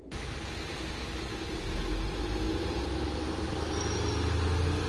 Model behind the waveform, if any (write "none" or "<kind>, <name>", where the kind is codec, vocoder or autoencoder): none